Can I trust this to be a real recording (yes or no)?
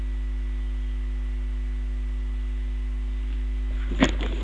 yes